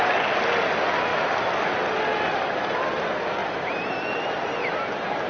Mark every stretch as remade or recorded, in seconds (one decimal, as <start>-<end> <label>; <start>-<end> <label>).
0.0-5.3 recorded